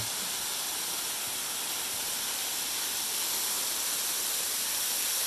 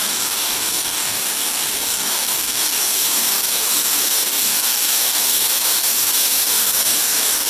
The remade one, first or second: second